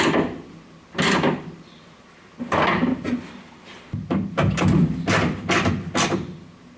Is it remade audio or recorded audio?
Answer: recorded